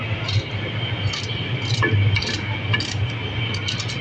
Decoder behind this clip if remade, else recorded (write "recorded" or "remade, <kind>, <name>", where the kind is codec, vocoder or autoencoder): recorded